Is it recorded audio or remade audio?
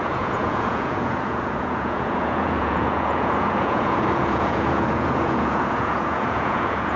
remade